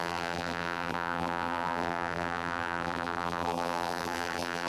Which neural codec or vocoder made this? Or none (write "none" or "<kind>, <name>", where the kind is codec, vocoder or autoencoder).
vocoder, BigVGAN v2